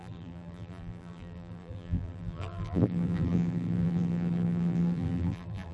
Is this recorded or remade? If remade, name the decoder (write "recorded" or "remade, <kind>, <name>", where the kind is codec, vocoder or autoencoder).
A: remade, vocoder, BigVGAN v2